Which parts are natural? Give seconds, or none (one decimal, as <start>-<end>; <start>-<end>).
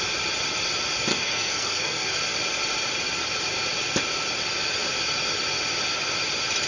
0.0-1.1; 2.2-6.7